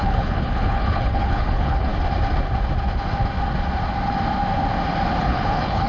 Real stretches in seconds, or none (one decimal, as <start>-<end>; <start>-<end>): 1.9-5.2